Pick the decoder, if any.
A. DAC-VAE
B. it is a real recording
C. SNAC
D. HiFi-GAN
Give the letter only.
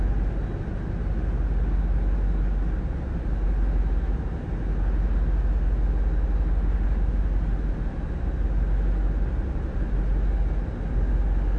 B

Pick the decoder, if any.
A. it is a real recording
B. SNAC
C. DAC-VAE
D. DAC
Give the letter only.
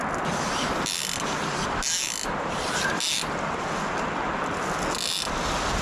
A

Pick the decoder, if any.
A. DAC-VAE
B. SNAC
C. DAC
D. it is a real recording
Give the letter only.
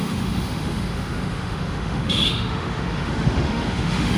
A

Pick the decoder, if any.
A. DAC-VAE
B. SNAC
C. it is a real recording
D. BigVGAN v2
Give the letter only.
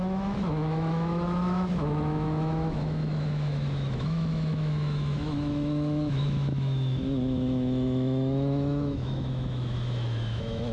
A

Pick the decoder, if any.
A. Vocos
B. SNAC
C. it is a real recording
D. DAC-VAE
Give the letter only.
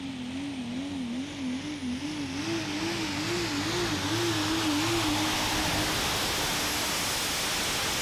C